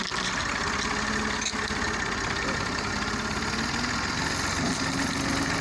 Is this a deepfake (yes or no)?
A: no